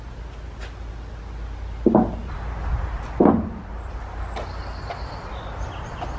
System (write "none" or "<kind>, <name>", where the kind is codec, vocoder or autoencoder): none